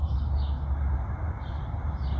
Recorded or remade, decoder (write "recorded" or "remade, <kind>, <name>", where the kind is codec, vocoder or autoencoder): recorded